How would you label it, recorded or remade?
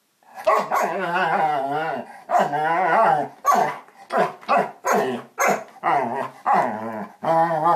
recorded